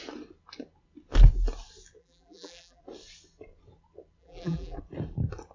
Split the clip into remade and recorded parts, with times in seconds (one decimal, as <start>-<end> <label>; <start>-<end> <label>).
0.0-2.0 recorded; 2.0-2.8 remade; 2.8-4.2 recorded; 4.2-4.8 remade; 4.8-5.5 recorded